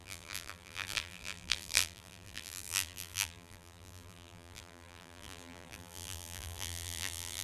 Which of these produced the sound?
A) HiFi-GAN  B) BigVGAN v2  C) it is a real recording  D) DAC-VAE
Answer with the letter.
B